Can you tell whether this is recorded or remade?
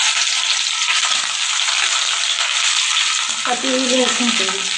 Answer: recorded